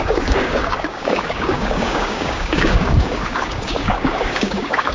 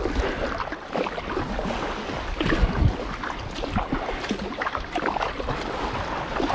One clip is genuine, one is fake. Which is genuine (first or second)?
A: second